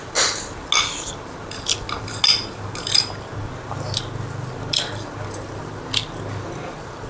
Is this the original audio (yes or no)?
yes